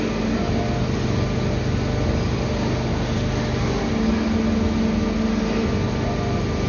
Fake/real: real